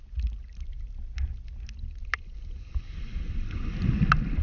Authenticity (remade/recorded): recorded